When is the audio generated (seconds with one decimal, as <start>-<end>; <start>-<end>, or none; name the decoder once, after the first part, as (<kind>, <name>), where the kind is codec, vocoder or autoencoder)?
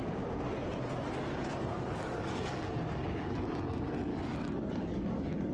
1.6-3.4 (codec, DAC); 4.1-5.5